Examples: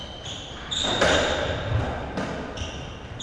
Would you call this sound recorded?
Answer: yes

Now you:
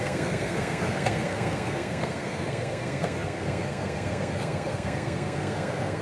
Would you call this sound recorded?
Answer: no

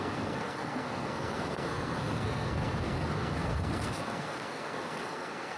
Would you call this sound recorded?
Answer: no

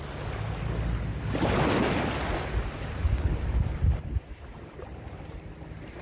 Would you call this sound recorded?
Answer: yes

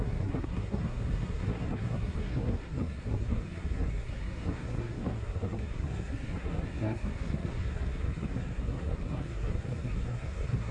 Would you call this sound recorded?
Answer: no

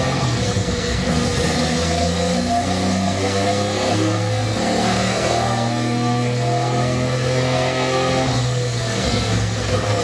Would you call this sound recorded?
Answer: no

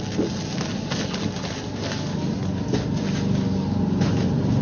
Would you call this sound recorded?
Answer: yes